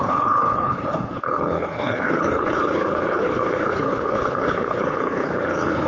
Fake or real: fake